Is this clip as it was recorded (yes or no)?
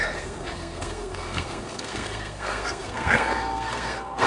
no